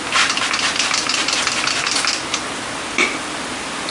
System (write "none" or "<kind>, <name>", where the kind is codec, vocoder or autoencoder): none